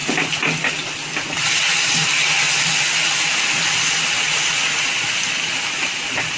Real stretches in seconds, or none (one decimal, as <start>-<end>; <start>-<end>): 0.0-6.4